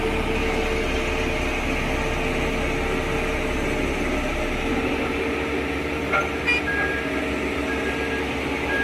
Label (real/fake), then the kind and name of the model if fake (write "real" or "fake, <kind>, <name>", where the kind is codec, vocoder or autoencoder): real